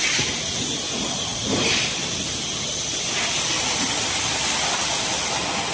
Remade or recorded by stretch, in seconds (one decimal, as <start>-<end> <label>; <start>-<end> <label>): 0.0-5.7 recorded